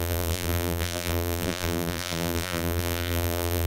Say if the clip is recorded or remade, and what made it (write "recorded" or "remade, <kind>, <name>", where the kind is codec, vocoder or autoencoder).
remade, vocoder, BigVGAN v2